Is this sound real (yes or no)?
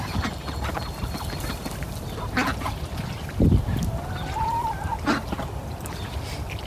yes